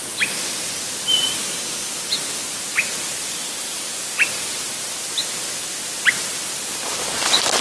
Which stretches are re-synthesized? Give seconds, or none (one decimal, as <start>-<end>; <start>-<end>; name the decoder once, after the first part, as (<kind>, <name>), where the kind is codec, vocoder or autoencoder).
1.4-1.9 (codec, DAC)